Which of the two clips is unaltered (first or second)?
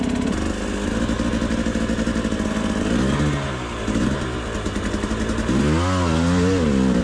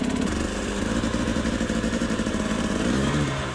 first